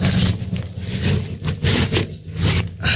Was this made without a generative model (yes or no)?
yes